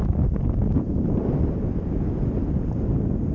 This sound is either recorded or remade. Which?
recorded